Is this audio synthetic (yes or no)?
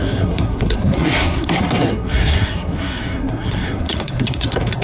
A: yes